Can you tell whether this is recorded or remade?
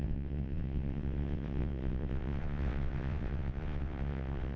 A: remade